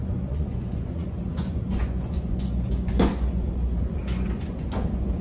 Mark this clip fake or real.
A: fake